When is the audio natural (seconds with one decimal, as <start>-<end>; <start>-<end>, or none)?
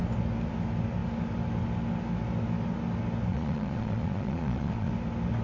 0.0-3.3; 4.9-5.4